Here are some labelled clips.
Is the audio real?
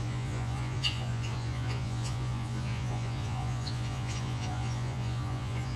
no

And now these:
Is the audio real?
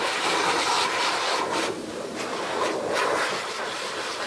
no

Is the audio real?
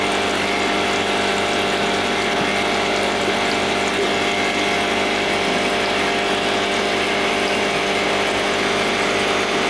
yes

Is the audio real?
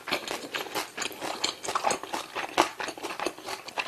yes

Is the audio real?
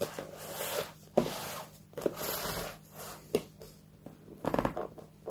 yes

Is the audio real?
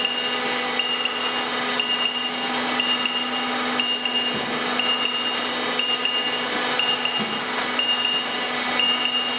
yes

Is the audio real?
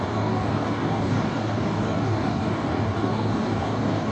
no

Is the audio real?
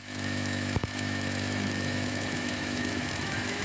no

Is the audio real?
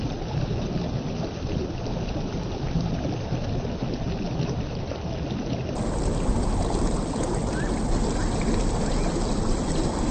yes